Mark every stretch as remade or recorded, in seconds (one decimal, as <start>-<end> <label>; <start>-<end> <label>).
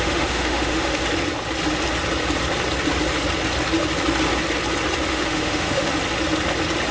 0.0-1.0 remade; 1.0-5.1 recorded; 5.1-5.9 remade; 5.9-6.9 recorded